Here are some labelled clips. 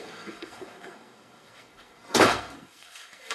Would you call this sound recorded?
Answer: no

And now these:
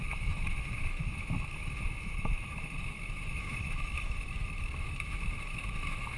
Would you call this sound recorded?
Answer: no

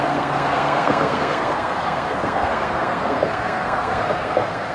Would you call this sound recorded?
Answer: no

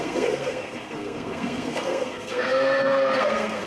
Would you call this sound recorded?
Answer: no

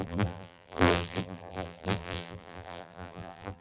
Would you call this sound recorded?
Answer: no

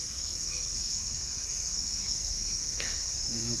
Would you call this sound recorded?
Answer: no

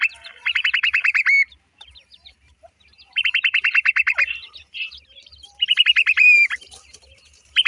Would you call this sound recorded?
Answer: no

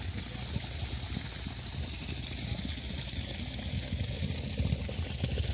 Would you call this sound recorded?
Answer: yes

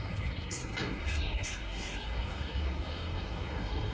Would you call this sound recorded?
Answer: no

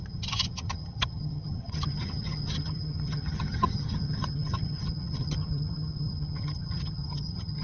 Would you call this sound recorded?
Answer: no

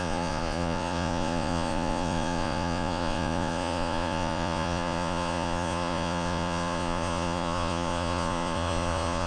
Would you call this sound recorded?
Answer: no